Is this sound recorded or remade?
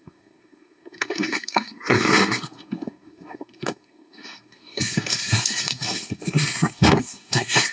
remade